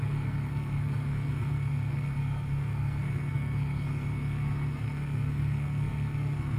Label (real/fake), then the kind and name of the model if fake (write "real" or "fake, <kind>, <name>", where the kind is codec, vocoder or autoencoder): fake, codec, SNAC